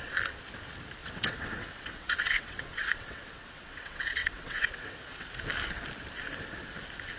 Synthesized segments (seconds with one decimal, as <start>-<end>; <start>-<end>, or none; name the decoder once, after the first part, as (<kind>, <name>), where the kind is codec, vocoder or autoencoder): 1.0-5.3 (vocoder, WaveNeXt)